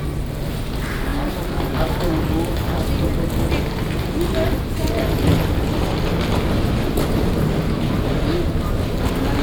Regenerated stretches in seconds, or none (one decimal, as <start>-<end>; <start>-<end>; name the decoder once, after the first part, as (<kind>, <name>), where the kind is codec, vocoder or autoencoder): none